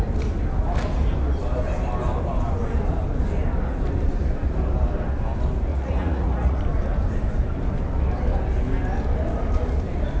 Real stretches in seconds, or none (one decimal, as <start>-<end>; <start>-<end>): 0.0-5.7; 6.6-10.2